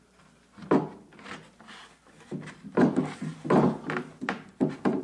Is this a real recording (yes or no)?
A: yes